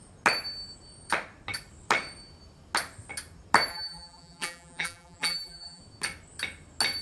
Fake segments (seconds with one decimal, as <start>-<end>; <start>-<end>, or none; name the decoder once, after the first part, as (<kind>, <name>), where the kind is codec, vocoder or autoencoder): 3.7-5.8 (vocoder, BigVGAN v2)